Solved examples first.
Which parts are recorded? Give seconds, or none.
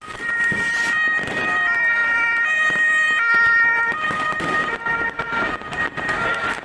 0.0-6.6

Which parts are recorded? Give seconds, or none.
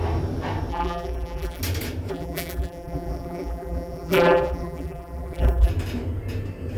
0.0-0.7; 1.6-2.1; 5.7-6.8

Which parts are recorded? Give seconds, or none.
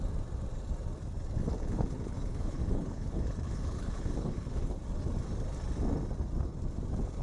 0.0-1.4; 4.8-7.2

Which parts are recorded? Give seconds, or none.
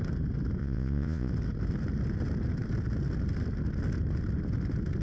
0.0-0.6; 1.3-5.0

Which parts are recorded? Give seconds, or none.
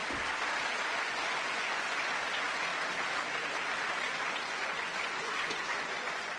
0.0-0.8; 2.7-3.8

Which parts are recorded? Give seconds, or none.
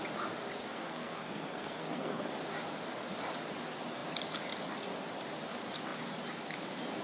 0.0-0.6; 2.3-7.0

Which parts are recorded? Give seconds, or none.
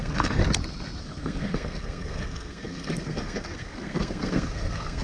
0.4-1.0